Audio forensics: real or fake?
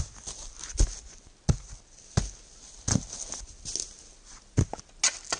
real